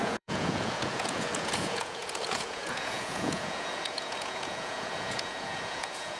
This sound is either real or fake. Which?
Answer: fake